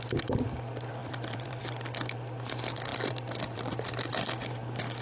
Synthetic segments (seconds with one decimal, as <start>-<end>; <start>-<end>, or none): 1.0-1.6; 2.9-3.7

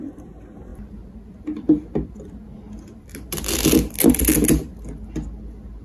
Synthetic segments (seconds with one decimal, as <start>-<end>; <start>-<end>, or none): none

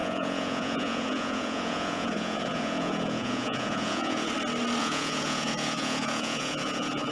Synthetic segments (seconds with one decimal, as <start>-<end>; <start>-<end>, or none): 0.0-4.3; 4.8-7.1

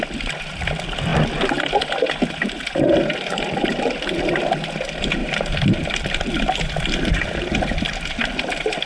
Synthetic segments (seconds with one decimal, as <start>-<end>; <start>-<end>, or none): 1.1-1.8; 3.6-4.3; 5.2-6.3

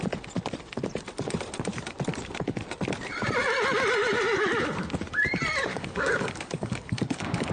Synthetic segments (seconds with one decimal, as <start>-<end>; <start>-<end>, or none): 5.7-7.5